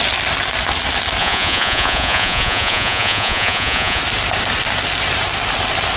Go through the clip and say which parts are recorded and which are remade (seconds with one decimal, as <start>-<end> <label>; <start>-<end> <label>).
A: 0.0-1.2 recorded; 1.2-4.0 remade; 4.0-6.0 recorded